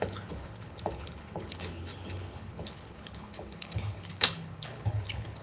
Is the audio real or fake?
fake